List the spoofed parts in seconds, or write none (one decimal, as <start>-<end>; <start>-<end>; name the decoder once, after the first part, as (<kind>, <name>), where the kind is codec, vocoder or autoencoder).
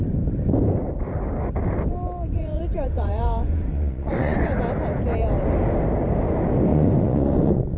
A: 2.3-4.6 (vocoder, Vocos); 6.7-7.8